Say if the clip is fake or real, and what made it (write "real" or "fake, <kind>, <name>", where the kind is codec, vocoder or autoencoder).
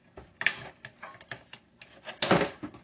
real